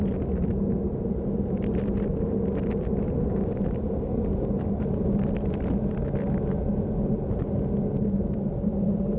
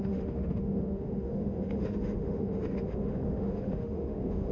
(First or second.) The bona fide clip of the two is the first